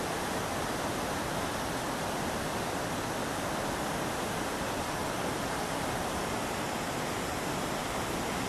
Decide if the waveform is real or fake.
real